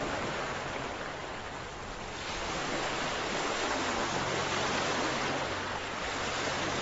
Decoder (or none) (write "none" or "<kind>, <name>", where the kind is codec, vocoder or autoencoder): none